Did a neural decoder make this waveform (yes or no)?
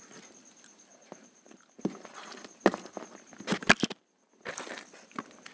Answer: no